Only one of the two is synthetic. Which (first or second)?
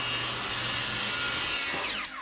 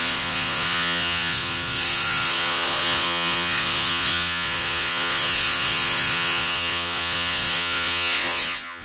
second